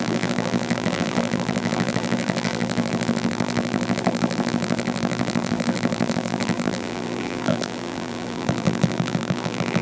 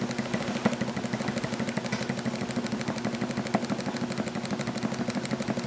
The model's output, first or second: first